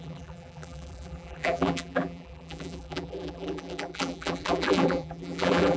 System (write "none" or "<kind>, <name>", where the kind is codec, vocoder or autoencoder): vocoder, BigVGAN v2